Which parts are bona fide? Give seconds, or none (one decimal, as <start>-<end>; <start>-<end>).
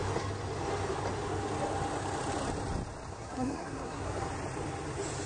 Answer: 0.0-3.1; 4.3-5.3